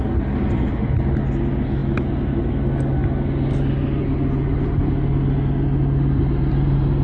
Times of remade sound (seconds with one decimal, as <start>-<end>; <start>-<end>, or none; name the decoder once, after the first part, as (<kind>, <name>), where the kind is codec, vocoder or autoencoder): none